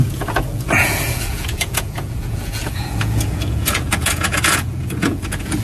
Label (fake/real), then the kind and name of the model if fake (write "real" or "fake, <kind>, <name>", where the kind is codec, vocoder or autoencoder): fake, vocoder, Vocos